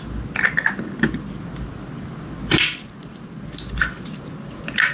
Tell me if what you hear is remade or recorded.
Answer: recorded